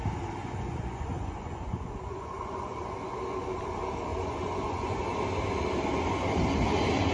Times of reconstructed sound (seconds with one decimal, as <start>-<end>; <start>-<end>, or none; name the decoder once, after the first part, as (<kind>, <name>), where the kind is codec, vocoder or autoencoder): 0.4-3.2 (vocoder, Vocos); 4.1-5.0